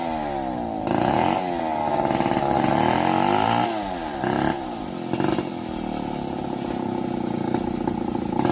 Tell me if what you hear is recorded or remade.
recorded